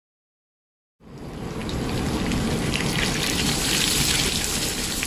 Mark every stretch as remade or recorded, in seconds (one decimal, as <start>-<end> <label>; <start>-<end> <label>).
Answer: 0.0-1.6 recorded; 1.6-5.1 remade